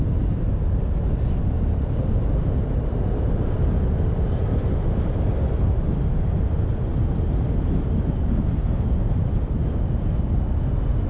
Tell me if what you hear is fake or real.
real